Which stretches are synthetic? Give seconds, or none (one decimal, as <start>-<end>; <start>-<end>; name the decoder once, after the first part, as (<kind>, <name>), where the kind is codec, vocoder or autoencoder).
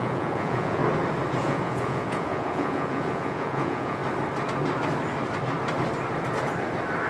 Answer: 0.0-0.8 (vocoder, Vocos); 1.4-4.0